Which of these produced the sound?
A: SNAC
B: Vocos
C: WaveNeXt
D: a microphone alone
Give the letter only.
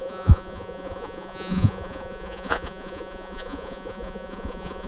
B